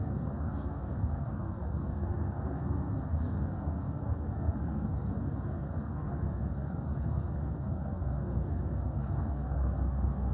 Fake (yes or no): yes